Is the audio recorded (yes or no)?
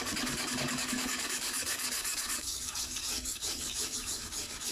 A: no